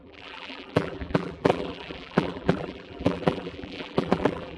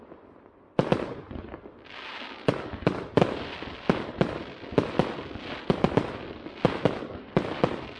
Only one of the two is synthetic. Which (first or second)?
first